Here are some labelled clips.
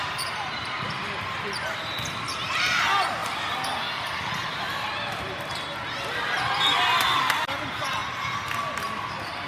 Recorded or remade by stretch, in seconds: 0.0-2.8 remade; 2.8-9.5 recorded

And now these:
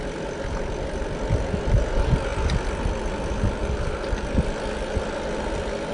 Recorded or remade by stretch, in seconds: 0.0-5.9 recorded

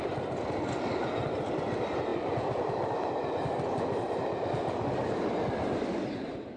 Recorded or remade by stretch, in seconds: 0.0-6.6 recorded

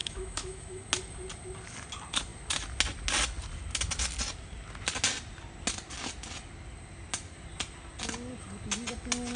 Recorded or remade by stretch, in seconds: 0.0-0.9 remade; 0.9-9.4 recorded

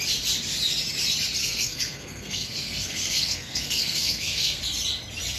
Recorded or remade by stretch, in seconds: 0.0-1.4 recorded; 1.4-4.6 remade; 4.6-5.4 recorded